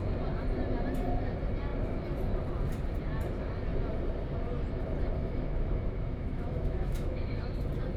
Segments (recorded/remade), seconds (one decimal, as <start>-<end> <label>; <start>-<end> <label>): 0.0-5.2 recorded; 5.2-7.4 remade; 7.4-8.0 recorded